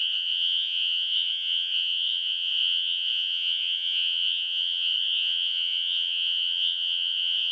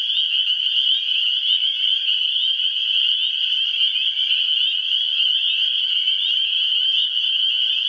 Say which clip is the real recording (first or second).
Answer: second